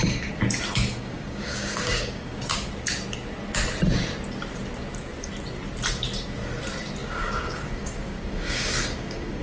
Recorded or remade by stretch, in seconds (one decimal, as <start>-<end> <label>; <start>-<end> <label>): 0.0-0.9 recorded; 0.9-2.4 remade; 2.4-7.0 recorded; 7.0-9.4 remade